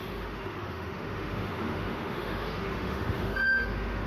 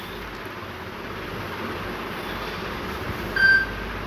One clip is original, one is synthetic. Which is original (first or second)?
second